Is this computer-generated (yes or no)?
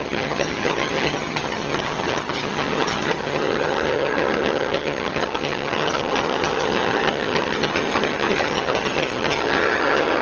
yes